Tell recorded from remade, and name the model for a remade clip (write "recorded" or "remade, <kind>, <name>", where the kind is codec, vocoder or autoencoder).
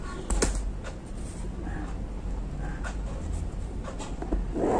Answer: recorded